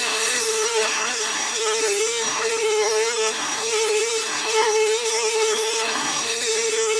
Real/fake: fake